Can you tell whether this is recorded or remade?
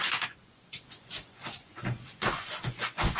remade